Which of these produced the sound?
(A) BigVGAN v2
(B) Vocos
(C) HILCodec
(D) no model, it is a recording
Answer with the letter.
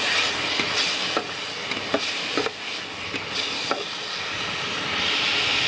D